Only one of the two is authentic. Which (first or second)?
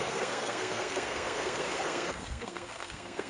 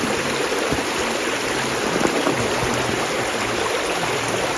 second